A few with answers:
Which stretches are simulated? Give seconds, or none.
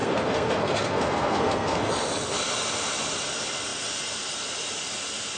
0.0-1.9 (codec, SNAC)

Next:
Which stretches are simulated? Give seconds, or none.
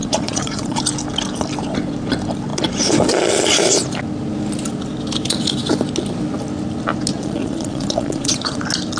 0.0-0.8 (vocoder, Vocos); 7.1-8.6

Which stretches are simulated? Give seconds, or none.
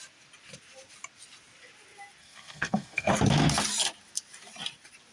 2.2-3.1 (codec, SNAC)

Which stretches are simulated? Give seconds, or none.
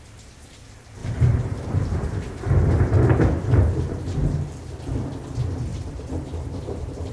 1.0-2.7 (vocoder, BigVGAN v2); 5.7-7.1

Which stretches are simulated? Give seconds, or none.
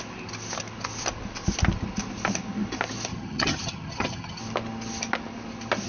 3.1-4.4 (vocoder, HiFi-GAN)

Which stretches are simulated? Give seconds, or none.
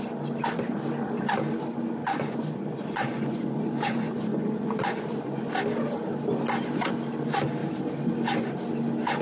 2.0-5.4 (vocoder, Vocos)